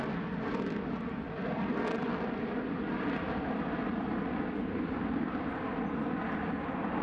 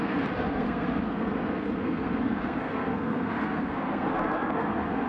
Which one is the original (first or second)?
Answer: first